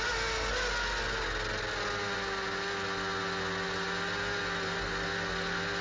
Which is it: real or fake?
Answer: real